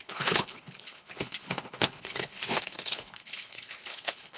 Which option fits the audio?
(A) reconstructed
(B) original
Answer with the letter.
A